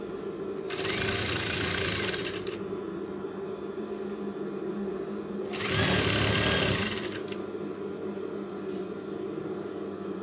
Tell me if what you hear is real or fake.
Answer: real